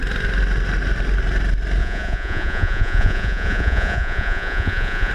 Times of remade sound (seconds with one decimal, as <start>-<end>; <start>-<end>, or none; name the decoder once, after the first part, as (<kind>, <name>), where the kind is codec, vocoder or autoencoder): 1.8-5.1 (vocoder, Vocos)